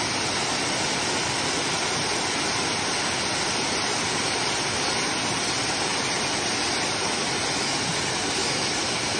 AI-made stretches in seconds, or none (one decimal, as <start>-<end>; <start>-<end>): none